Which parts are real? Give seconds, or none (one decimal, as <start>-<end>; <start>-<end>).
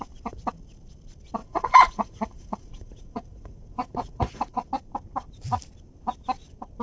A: 0.0-1.4; 4.7-6.8